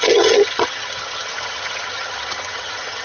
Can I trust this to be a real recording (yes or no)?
no